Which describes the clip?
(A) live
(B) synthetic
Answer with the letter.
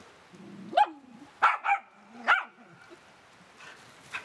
A